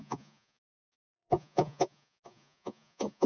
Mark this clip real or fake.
fake